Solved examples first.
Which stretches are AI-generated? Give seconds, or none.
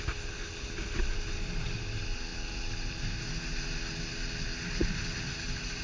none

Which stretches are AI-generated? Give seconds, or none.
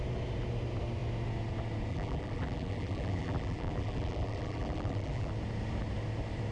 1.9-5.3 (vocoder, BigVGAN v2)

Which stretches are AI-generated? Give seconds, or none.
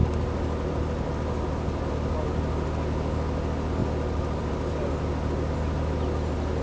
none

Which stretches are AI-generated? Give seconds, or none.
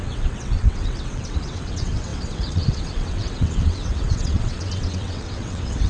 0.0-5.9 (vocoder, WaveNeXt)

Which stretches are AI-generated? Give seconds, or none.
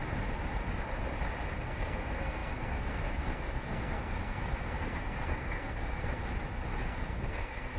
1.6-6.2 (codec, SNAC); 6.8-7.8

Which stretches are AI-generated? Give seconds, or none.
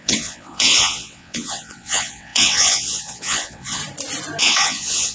0.0-3.8 (vocoder, WaveNeXt); 4.4-5.1